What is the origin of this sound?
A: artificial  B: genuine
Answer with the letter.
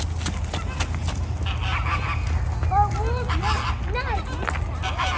B